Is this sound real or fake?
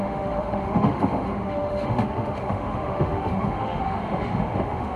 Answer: fake